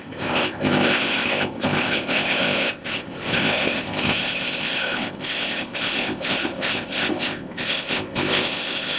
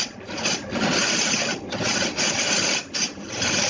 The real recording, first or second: second